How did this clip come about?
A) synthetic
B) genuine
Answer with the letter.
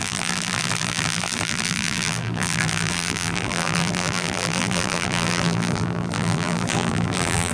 A